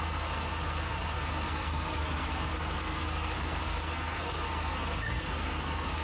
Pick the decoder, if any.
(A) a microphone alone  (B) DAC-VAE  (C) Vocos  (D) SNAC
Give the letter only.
D